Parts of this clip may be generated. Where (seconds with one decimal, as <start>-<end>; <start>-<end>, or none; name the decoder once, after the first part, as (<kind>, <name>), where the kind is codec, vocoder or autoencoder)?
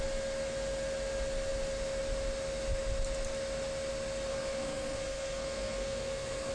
4.3-6.5 (codec, SNAC)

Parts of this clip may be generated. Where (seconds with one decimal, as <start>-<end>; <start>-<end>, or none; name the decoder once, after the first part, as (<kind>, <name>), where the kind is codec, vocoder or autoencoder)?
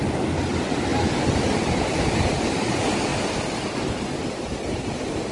none